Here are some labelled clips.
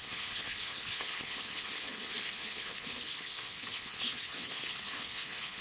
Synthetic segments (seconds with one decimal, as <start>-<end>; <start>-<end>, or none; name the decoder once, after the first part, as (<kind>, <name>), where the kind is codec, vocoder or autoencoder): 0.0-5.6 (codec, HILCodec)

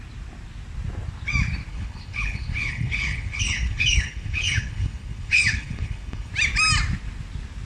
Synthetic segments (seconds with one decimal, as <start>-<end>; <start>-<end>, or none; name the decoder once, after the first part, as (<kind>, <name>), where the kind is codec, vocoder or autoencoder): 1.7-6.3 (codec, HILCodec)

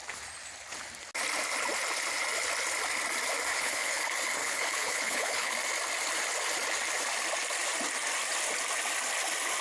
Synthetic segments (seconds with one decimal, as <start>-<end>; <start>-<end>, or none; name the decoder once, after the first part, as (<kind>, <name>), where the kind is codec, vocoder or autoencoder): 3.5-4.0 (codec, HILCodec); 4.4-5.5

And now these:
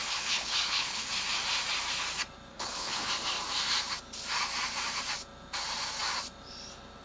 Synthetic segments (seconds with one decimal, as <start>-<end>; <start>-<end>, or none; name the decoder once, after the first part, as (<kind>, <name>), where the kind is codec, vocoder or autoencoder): 0.0-1.1 (codec, HILCodec); 2.5-3.1

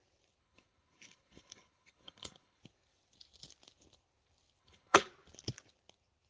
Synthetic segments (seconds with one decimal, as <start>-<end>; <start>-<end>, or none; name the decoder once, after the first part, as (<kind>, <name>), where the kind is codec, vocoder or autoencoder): 0.4-2.6 (codec, HILCodec); 4.6-5.1